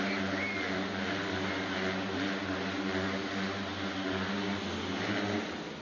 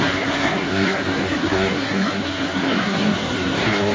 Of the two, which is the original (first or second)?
first